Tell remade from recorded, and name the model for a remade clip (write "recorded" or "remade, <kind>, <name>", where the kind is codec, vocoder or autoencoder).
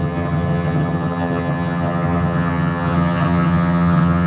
remade, vocoder, HiFi-GAN